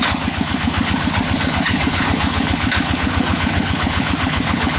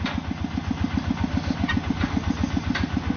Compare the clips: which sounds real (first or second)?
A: second